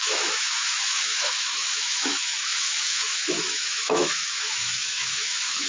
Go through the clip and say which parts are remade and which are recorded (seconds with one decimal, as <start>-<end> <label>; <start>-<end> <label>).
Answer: 0.0-5.7 remade